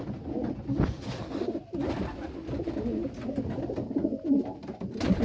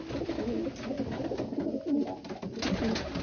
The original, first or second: second